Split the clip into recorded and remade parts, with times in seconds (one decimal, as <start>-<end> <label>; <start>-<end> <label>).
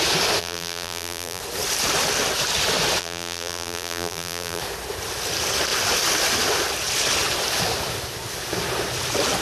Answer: 0.0-0.4 recorded; 0.4-1.4 remade; 1.4-3.0 recorded; 3.0-4.6 remade; 4.6-9.4 recorded